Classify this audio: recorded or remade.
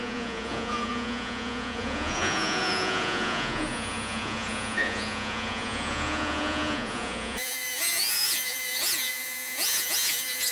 remade